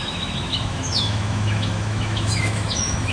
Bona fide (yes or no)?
no